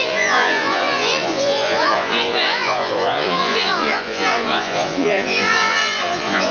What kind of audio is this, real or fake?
fake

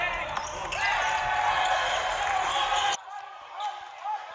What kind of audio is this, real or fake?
real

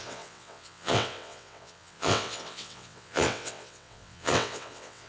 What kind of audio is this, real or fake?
fake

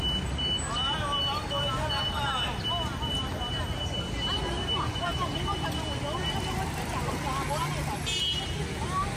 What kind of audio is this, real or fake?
real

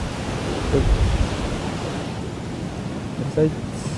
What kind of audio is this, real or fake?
real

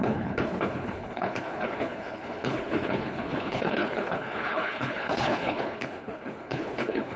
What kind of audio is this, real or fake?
fake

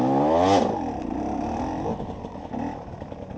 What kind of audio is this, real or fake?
real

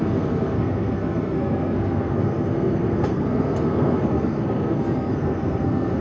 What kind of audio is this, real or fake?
fake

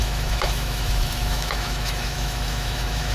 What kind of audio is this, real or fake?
fake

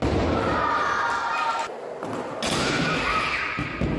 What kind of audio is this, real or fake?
real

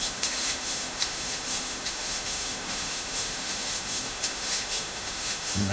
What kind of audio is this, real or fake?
fake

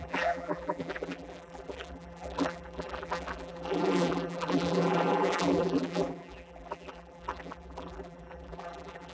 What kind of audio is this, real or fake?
fake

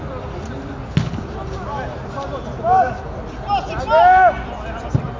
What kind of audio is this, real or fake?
real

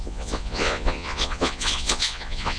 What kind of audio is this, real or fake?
fake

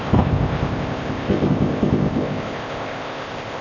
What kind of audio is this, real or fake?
fake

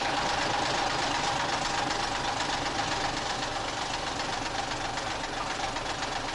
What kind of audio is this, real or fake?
real